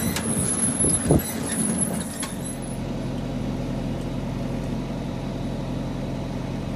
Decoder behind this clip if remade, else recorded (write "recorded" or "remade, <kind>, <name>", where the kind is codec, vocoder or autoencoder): recorded